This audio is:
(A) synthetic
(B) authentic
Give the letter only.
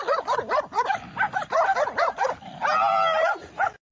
B